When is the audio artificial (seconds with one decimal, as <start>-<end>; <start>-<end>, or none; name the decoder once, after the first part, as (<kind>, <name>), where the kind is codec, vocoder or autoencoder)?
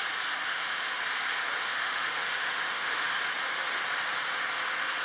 0.5-1.0 (autoencoder, DAC-VAE); 1.6-3.2